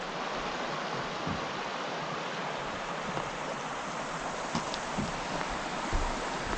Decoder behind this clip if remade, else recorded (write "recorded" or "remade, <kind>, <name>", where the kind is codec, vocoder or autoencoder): recorded